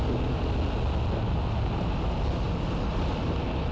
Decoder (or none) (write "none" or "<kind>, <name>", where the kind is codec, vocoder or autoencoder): none